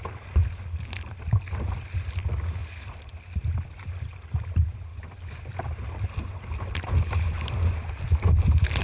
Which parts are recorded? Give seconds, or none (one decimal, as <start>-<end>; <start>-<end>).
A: 0.0-8.8